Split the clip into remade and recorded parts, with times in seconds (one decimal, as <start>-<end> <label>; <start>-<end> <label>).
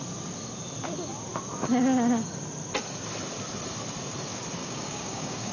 0.0-4.6 recorded; 4.6-5.5 remade